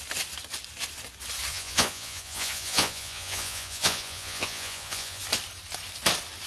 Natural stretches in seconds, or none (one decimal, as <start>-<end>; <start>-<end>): 0.0-1.5; 5.2-6.5